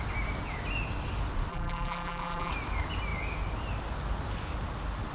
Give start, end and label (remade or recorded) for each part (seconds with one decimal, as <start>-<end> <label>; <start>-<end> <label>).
0.0-1.5 recorded; 1.5-2.5 remade; 2.5-5.1 recorded